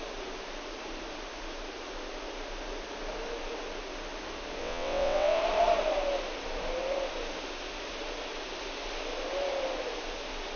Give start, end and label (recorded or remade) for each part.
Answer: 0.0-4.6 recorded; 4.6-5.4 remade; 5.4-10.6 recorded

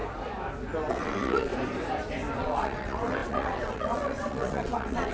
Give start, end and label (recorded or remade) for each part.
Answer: 0.0-0.9 recorded; 0.9-1.5 remade; 1.5-2.4 recorded; 2.4-5.1 remade